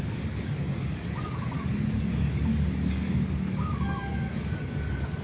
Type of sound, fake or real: fake